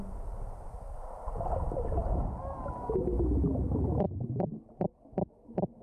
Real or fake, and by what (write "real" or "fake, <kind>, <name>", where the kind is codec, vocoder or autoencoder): real